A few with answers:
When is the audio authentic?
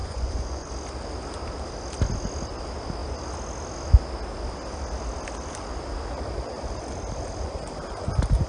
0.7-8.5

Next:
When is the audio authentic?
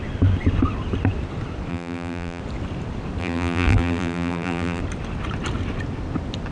0.0-1.7; 2.4-3.2; 4.8-6.5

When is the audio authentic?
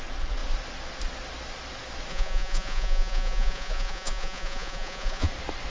0.0-2.1; 5.3-5.7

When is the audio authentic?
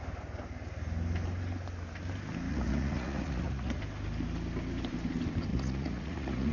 0.0-2.5; 3.8-5.5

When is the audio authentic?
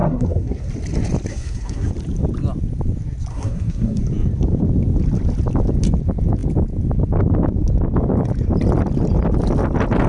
0.7-1.3; 1.9-3.3; 4.0-10.1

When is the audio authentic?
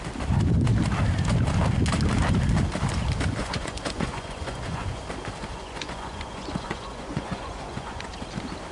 0.0-3.4; 5.0-5.5; 8.1-8.7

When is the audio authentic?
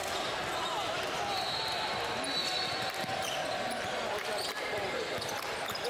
0.5-2.4